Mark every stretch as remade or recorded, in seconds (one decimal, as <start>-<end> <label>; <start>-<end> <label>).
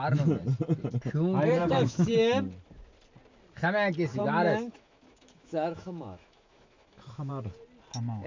0.0-1.6 recorded; 1.6-2.1 remade; 2.1-4.2 recorded; 4.2-7.3 remade; 7.3-8.3 recorded